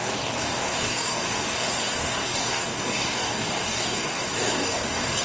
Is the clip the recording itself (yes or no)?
no